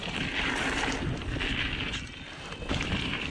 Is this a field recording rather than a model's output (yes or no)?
yes